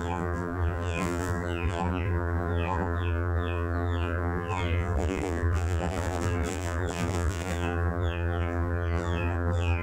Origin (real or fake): fake